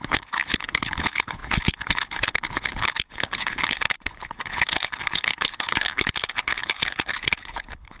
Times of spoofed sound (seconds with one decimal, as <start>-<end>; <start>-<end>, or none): 0.0-8.0